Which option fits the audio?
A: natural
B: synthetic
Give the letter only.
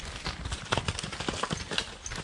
A